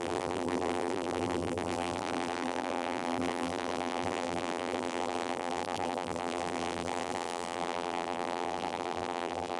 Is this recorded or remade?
remade